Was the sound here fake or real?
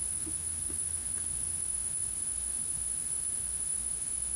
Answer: fake